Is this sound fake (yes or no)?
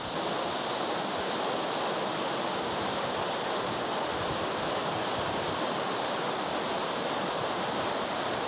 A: no